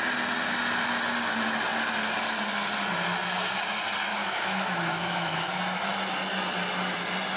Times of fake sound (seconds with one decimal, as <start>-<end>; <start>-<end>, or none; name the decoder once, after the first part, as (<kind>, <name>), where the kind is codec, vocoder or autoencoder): 4.1-5.6 (autoencoder, DAC-VAE)